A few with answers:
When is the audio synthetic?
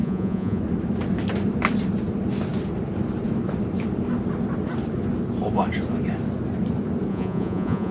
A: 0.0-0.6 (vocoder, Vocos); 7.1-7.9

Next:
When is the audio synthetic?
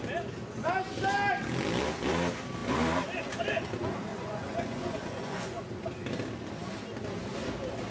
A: 4.1-5.6 (vocoder, Vocos)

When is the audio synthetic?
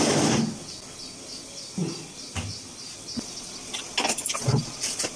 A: none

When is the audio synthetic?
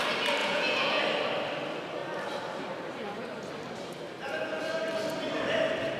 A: 0.4-1.0 (vocoder, Vocos)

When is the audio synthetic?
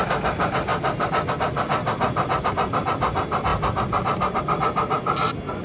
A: none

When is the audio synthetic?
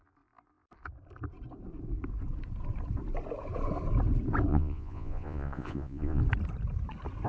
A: 4.5-6.2 (vocoder, Vocos)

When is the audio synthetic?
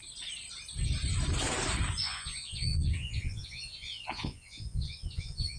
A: 2.0-5.6 (vocoder, Vocos)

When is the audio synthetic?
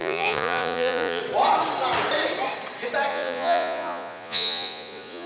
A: 0.0-1.2 (vocoder, Vocos); 3.1-5.3